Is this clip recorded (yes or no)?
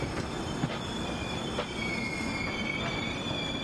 yes